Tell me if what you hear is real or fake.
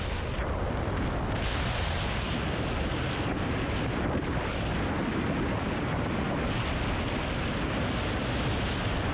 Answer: real